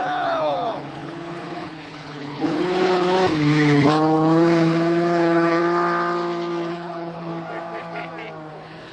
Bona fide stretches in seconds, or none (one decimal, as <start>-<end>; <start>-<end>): 5.6-6.7; 7.3-8.5